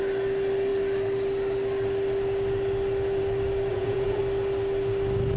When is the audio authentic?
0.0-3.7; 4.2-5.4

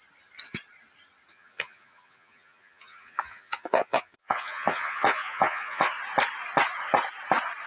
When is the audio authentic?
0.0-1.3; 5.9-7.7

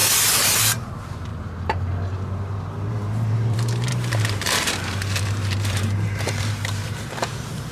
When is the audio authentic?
0.0-0.6; 1.3-2.9

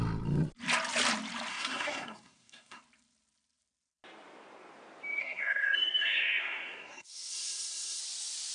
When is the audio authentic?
0.0-1.5; 2.8-5.2; 8.0-8.5

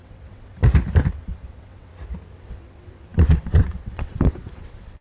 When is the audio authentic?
0.6-1.2; 1.9-2.4